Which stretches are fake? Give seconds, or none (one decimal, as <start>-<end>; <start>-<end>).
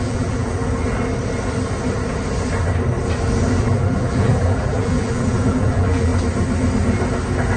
0.0-0.6; 3.6-6.1